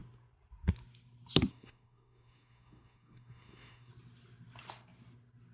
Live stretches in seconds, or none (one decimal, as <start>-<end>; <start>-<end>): 0.0-1.5; 3.9-5.5